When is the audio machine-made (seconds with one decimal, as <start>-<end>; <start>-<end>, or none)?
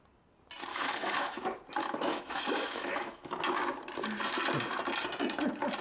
0.7-1.4; 1.8-3.4